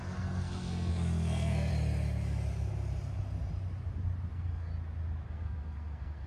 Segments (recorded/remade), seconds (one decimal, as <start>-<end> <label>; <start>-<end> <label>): 0.0-1.7 remade; 1.7-4.3 recorded; 4.3-4.7 remade; 4.7-5.3 recorded; 5.3-6.3 remade